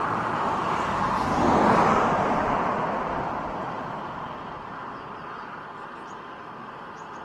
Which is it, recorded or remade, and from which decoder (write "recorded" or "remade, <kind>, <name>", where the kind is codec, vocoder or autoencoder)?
recorded